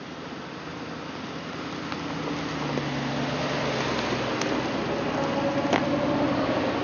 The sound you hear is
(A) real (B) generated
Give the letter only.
A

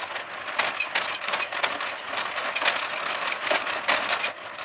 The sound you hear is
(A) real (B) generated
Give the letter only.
A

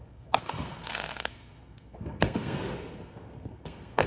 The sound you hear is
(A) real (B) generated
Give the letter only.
B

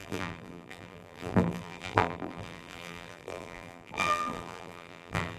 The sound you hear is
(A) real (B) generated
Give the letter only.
B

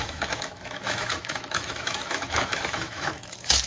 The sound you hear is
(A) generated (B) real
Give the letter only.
A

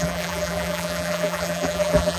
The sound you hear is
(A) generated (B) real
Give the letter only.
A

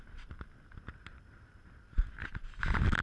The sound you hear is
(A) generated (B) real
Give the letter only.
B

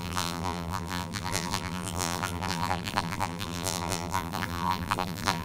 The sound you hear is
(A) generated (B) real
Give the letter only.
A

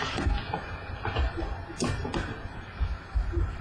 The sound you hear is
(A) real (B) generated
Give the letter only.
A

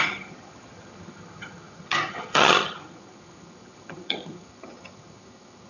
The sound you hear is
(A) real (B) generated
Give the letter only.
B